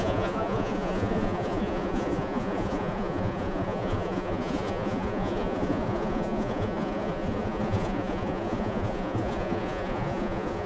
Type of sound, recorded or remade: remade